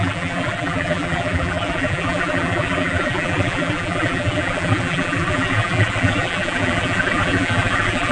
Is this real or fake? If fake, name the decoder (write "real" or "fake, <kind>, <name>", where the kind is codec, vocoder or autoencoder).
fake, vocoder, BigVGAN v2